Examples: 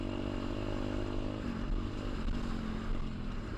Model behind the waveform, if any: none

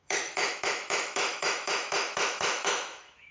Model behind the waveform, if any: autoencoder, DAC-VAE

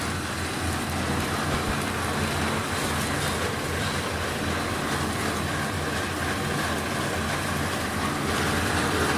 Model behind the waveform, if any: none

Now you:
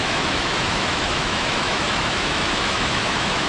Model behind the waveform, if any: autoencoder, DAC-VAE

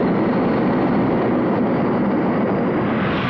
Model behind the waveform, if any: none